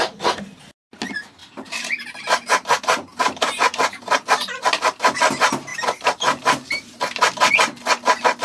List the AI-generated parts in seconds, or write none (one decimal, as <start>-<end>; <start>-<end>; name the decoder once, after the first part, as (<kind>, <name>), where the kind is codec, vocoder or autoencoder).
1.4-4.0 (vocoder, BigVGAN v2); 5.7-7.5